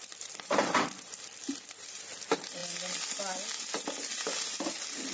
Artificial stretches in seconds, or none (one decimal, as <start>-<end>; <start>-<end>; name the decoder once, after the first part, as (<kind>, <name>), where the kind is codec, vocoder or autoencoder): none